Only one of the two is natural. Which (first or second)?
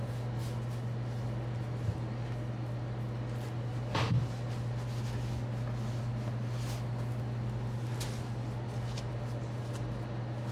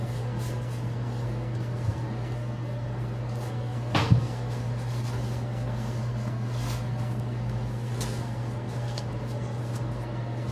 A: first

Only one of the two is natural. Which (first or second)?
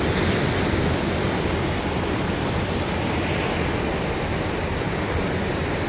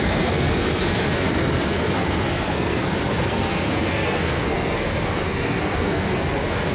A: first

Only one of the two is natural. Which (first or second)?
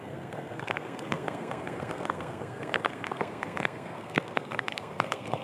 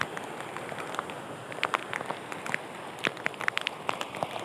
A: second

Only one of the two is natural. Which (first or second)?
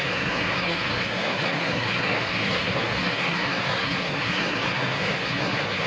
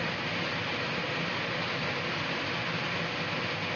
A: second